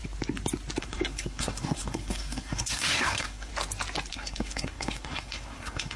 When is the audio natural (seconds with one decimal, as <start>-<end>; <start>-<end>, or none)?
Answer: 0.0-0.8; 3.5-4.1